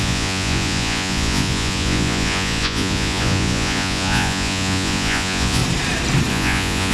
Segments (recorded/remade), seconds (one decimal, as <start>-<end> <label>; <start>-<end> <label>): 0.0-5.6 remade; 5.6-6.3 recorded; 6.3-6.9 remade